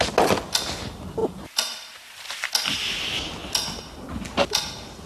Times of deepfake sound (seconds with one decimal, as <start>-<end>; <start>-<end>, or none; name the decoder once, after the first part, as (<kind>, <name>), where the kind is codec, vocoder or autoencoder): 1.2-2.5 (vocoder, BigVGAN v2)